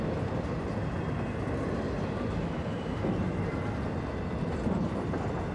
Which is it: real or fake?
real